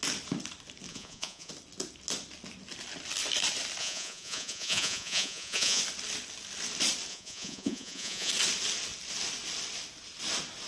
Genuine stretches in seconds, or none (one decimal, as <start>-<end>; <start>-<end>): 0.0-0.9; 1.5-3.8; 5.8-7.1; 8.3-10.7

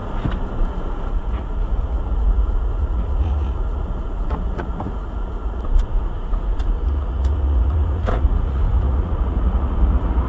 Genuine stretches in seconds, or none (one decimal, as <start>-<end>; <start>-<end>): 0.0-1.1

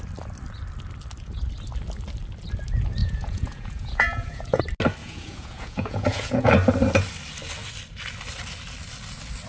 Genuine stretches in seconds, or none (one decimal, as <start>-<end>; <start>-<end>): 0.0-3.0; 4.6-5.0; 6.5-9.5

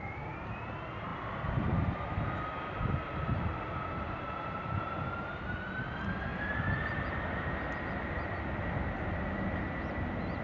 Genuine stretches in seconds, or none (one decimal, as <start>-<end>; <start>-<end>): 0.0-10.4